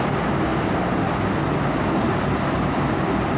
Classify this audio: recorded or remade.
recorded